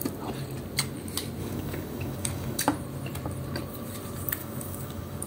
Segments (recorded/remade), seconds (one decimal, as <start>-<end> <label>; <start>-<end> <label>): 0.0-1.4 recorded; 1.4-2.6 remade; 2.6-4.4 recorded; 4.4-5.3 remade